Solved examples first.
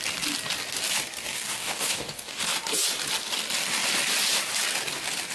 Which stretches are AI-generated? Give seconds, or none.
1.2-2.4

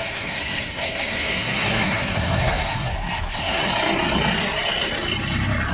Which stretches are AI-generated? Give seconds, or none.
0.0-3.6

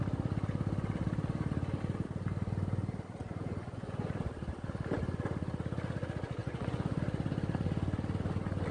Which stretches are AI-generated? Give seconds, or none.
3.2-4.2; 6.4-7.0

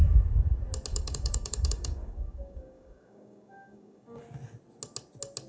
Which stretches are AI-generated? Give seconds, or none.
0.9-4.2